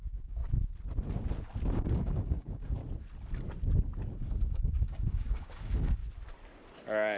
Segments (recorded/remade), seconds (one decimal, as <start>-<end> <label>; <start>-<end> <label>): 0.0-0.4 remade; 0.4-1.7 recorded; 1.7-2.8 remade; 2.8-4.2 recorded; 4.2-6.0 remade; 6.0-7.2 recorded